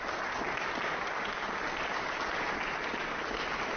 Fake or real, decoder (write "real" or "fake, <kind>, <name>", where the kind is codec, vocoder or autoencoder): real